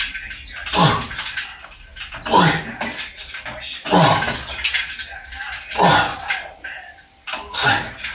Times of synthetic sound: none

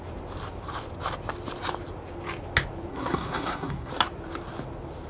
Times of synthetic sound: 2.9-3.9 (codec, SNAC)

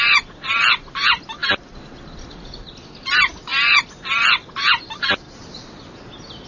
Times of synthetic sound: 1.4-2.1 (vocoder, BigVGAN v2)

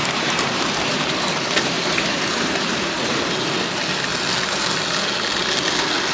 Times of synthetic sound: 0.0-3.2 (vocoder, BigVGAN v2)

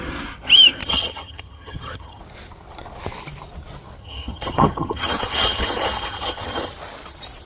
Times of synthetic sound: 0.8-2.2 (vocoder, HiFi-GAN); 4.0-6.7

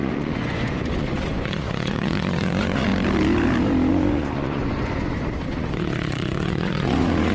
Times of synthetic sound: 0.0-2.9 (vocoder, Vocos); 3.9-7.3